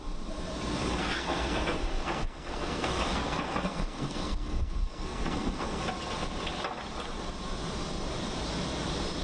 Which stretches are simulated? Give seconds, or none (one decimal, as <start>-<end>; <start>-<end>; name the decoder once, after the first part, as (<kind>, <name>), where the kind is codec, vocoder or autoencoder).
1.0-5.8 (codec, SNAC)